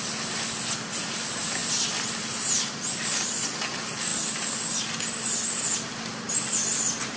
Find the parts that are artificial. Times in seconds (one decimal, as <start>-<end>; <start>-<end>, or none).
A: none